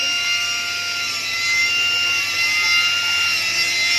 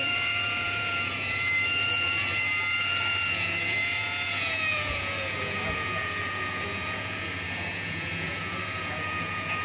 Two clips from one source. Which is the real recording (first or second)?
first